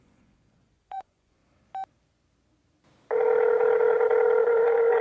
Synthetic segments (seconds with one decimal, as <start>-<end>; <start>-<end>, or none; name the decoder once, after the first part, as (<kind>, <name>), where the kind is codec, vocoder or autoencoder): 0.0-1.4 (vocoder, Vocos); 4.4-5.0